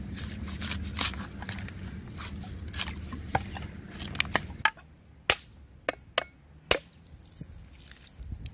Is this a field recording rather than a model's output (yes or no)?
yes